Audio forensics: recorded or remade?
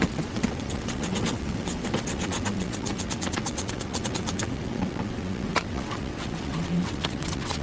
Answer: remade